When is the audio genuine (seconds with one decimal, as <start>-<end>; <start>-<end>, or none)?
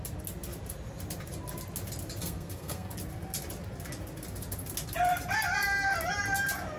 0.0-2.2; 2.9-6.8